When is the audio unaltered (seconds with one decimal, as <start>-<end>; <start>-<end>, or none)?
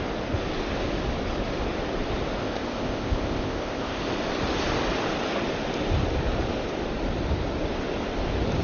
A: 0.0-2.4; 4.0-8.6